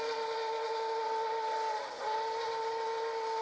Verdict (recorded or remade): recorded